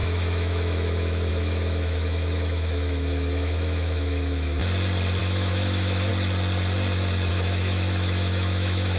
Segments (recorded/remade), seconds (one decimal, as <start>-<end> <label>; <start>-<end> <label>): 0.0-4.6 remade; 4.6-5.2 recorded; 5.2-6.1 remade; 6.1-7.3 recorded; 7.3-9.0 remade